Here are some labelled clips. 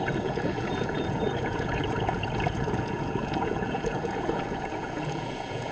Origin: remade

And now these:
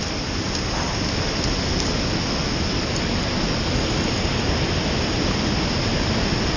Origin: recorded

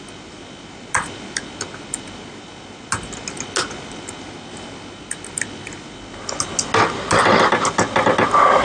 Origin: recorded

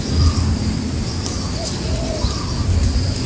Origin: recorded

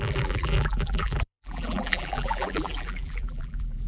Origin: remade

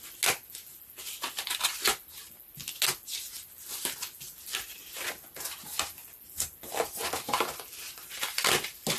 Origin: recorded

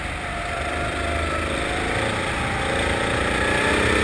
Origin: recorded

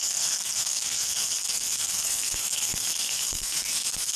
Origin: remade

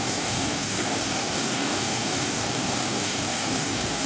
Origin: remade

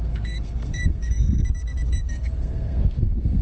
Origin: remade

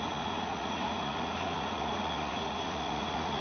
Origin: remade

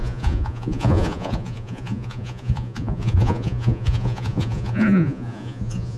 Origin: remade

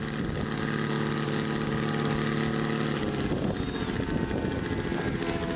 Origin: recorded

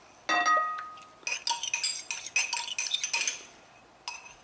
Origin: recorded